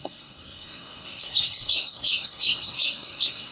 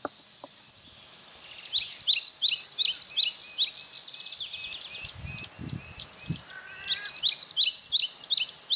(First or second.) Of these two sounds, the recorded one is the second